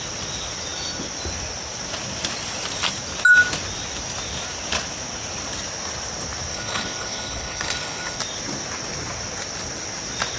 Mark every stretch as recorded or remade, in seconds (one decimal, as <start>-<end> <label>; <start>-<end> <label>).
0.0-6.5 recorded; 6.5-8.2 remade; 8.2-10.4 recorded